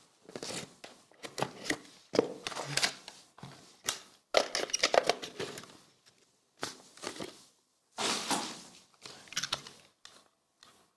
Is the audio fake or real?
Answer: real